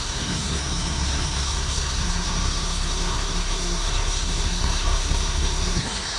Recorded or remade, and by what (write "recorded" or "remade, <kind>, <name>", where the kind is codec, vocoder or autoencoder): remade, codec, SNAC